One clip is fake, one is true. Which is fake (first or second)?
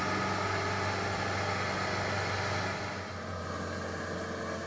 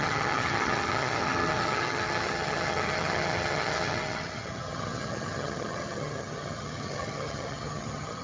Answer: second